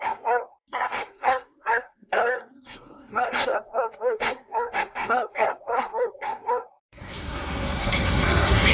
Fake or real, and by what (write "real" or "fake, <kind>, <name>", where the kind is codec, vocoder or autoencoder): fake, codec, SNAC